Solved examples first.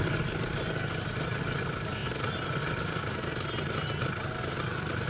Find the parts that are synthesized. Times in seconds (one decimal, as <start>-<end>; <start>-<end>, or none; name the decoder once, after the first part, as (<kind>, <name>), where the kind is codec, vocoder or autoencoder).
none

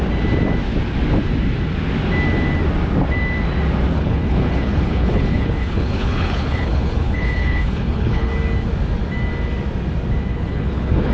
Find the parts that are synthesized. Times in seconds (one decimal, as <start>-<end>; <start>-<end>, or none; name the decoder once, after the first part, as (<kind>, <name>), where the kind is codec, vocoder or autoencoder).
3.9-8.3 (codec, HILCodec); 10.3-11.1

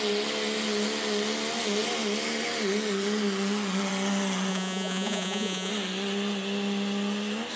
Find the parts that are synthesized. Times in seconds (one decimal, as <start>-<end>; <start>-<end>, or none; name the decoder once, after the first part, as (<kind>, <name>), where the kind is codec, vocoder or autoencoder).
4.5-5.7 (vocoder, Vocos)

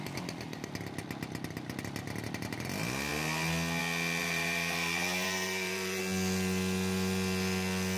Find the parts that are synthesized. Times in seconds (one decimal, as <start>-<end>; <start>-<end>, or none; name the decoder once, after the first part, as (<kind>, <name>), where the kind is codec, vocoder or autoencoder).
4.2-6.0 (vocoder, BigVGAN v2)

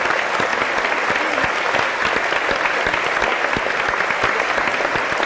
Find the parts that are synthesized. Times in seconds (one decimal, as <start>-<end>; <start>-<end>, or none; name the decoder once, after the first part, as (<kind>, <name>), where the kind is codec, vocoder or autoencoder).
none

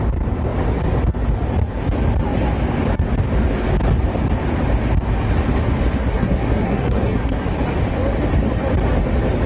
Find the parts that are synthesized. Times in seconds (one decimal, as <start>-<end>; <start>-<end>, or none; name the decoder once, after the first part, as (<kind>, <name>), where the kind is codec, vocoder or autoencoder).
6.0-7.5 (codec, SNAC)